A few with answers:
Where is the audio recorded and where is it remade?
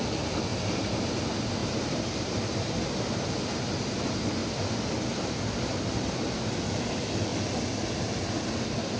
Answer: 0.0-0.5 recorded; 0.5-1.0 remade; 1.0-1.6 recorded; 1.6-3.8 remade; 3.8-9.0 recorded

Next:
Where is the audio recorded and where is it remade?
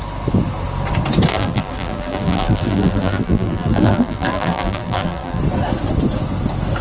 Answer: 0.0-1.3 recorded; 1.3-5.4 remade; 5.4-6.8 recorded